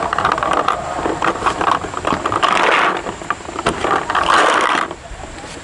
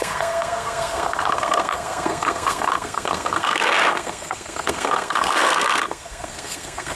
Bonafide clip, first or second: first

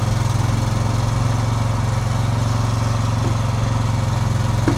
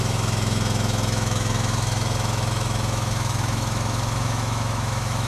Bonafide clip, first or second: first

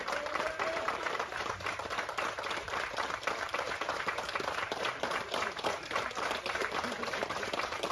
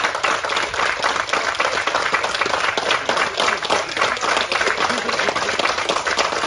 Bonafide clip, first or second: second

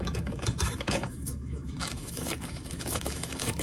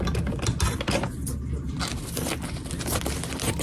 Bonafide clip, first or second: second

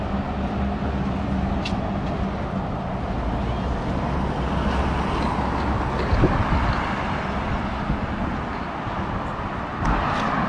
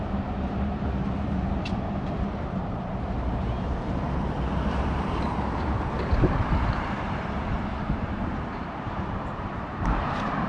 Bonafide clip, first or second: first